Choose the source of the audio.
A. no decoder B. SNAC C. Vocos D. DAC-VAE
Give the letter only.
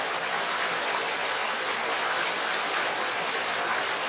A